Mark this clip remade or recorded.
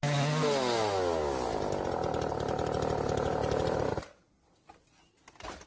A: recorded